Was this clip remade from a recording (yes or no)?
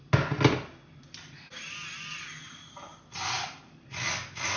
no